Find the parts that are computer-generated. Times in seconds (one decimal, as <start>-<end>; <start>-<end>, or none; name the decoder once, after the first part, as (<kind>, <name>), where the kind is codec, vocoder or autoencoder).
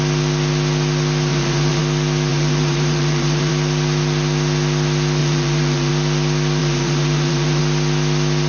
1.3-1.8 (vocoder, BigVGAN v2); 2.3-3.5; 5.2-5.9; 6.6-7.6